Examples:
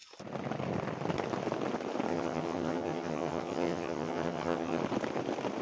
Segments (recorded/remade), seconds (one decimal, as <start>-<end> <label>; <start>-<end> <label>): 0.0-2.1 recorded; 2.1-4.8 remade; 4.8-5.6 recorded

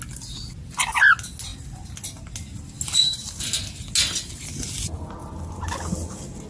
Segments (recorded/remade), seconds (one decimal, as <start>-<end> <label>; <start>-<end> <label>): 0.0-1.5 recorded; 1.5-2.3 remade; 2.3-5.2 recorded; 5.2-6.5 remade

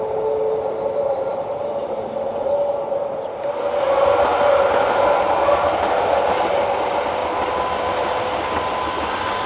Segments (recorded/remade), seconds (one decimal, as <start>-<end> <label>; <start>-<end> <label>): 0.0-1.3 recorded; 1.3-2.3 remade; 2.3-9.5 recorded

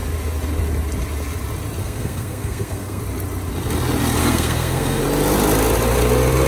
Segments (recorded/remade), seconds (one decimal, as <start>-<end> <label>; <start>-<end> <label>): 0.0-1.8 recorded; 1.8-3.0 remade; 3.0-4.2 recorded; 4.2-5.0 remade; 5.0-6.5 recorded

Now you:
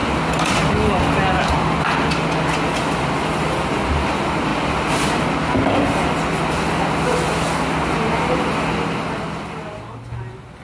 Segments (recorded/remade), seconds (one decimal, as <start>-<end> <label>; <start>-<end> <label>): 0.0-10.6 recorded

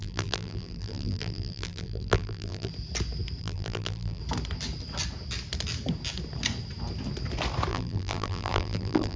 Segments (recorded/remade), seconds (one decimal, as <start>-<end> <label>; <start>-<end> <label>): 0.0-2.7 remade; 2.7-3.4 recorded; 3.4-4.2 remade; 4.2-7.7 recorded; 7.7-9.2 remade